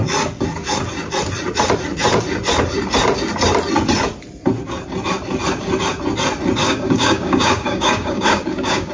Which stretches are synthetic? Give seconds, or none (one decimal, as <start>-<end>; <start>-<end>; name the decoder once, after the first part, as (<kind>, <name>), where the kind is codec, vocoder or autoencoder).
6.6-8.9 (codec, DAC)